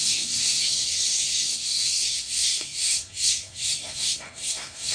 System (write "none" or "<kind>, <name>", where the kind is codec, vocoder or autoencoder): codec, SNAC